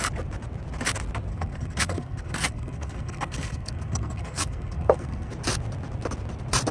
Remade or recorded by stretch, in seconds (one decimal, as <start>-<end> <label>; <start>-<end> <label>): 0.0-1.3 recorded; 1.3-5.3 remade; 5.3-6.7 recorded